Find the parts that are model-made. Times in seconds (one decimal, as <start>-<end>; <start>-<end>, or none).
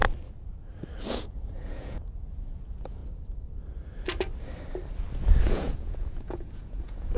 1.1-3.0; 5.4-7.2